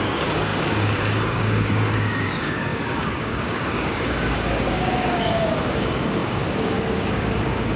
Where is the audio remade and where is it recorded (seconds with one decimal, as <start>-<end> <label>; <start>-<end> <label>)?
0.0-7.8 remade

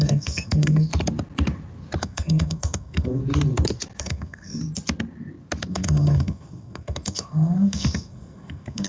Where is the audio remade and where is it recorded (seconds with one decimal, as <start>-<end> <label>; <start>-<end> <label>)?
0.0-0.9 remade; 0.9-2.0 recorded; 2.0-3.2 remade; 3.2-4.0 recorded; 4.0-4.6 remade; 4.6-5.7 recorded; 5.7-8.9 remade

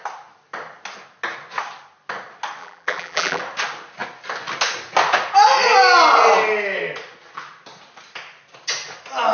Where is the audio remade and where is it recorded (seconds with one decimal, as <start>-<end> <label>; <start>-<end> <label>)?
0.0-2.6 recorded; 2.6-3.4 remade; 3.4-9.3 recorded

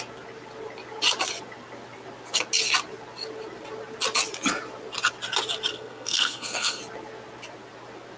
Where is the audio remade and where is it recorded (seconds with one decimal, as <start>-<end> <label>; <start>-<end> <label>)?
0.0-5.7 recorded; 5.7-6.8 remade; 6.8-8.2 recorded

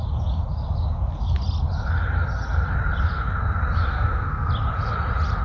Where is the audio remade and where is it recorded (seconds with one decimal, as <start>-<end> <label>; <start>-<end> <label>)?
0.0-3.9 recorded; 3.9-4.5 remade; 4.5-5.4 recorded